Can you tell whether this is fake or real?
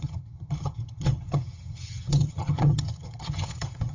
fake